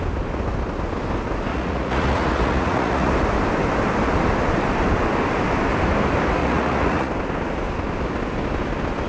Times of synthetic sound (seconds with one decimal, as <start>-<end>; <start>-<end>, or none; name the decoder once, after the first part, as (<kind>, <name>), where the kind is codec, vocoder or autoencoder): 1.5-3.1 (vocoder, Vocos); 6.4-7.1